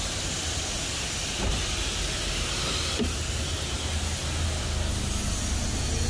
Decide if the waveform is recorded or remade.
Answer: recorded